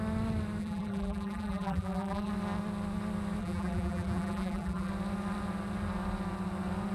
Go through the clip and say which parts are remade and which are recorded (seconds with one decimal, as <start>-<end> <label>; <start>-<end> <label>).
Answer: 0.0-0.6 recorded; 0.6-2.3 remade; 2.3-3.4 recorded; 3.4-4.9 remade; 4.9-6.9 recorded